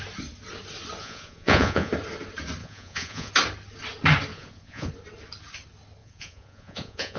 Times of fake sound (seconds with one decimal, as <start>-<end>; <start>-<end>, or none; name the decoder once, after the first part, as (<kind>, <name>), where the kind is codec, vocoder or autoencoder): 1.0-1.9 (vocoder, Vocos); 2.6-3.3; 4.3-4.9; 6.0-7.2